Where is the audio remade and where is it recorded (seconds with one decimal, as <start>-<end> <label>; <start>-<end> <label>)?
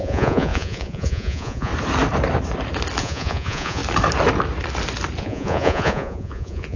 0.0-1.7 remade; 1.7-3.0 recorded; 3.0-3.8 remade; 3.8-5.2 recorded; 5.2-6.8 remade